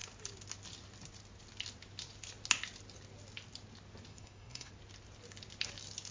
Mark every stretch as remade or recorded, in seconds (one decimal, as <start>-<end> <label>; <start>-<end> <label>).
0.0-4.1 recorded; 4.1-4.7 remade; 4.7-6.1 recorded